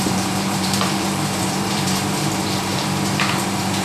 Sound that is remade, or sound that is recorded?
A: remade